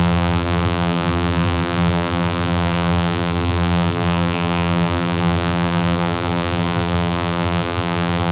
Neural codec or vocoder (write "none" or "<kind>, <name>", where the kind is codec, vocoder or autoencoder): vocoder, BigVGAN v2